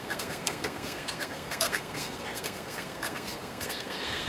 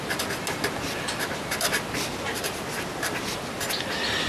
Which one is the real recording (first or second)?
second